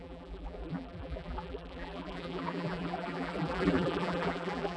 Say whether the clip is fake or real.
fake